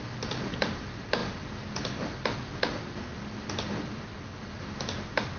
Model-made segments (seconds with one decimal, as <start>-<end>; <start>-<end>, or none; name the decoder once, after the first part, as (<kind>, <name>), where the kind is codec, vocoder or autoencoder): 0.0-1.2 (vocoder, BigVGAN v2); 4.4-5.4